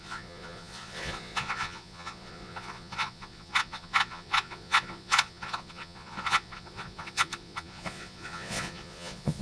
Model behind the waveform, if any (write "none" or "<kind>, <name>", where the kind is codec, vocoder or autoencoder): vocoder, Vocos